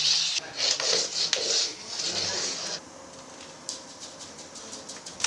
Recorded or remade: recorded